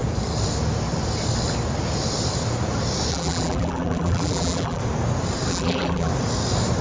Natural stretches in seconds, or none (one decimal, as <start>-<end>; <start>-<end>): 0.0-3.1; 4.8-5.5; 6.1-6.8